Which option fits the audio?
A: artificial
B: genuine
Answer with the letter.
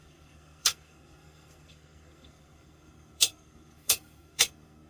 A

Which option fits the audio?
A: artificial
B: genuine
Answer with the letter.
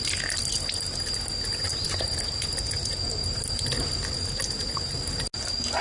B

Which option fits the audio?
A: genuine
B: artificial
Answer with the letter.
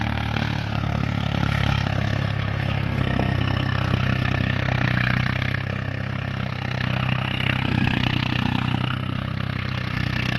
B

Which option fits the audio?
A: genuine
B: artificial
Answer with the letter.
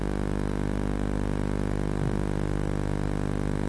A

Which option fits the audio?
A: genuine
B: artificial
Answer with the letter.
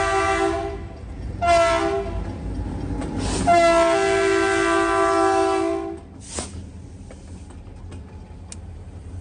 A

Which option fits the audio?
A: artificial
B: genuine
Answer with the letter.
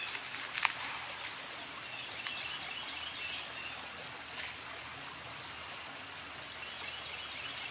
B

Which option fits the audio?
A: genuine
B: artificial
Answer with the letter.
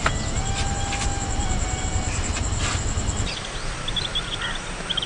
A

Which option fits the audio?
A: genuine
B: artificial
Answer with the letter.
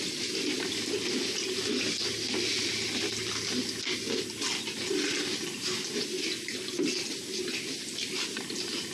A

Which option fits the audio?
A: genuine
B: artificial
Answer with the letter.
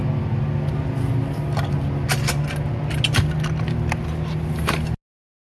A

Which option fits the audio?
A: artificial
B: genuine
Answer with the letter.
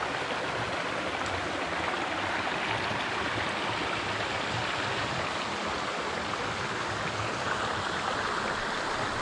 B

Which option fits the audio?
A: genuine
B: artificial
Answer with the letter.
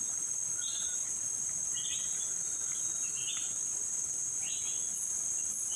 A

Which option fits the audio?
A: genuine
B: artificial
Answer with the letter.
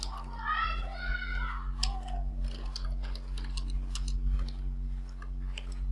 A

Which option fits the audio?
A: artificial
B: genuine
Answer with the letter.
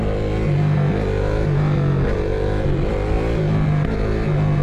B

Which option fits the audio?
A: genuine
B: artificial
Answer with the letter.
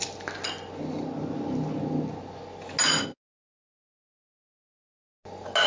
A